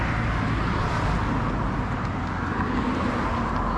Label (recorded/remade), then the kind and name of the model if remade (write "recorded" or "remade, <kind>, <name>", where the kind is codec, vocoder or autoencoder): recorded